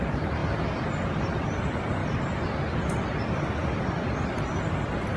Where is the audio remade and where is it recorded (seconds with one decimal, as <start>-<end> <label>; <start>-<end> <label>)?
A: 0.0-5.2 recorded